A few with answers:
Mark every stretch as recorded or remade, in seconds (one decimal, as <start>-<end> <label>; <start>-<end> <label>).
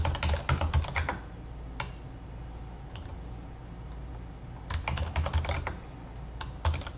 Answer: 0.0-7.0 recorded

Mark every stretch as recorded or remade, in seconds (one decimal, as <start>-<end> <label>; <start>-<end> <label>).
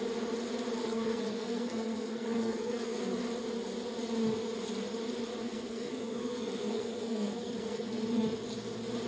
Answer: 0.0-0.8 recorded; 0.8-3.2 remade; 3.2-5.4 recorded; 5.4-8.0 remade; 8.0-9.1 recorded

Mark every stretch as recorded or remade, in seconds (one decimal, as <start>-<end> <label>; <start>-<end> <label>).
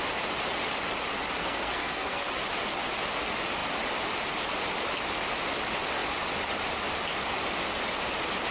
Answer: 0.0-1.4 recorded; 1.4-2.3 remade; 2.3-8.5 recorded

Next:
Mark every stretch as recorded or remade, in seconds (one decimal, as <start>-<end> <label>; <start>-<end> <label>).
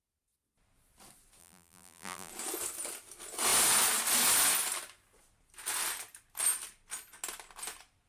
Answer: 0.0-1.4 recorded; 1.4-2.3 remade; 2.3-8.1 recorded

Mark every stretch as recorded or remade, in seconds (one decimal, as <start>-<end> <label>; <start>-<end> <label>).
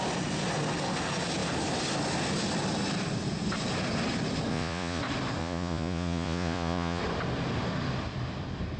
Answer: 0.0-4.5 recorded; 4.5-5.0 remade; 5.0-5.4 recorded; 5.4-7.0 remade; 7.0-8.8 recorded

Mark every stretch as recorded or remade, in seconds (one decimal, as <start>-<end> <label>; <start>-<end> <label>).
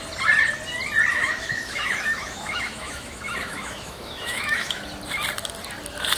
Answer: 0.0-1.1 recorded; 1.1-4.8 remade; 4.8-6.2 recorded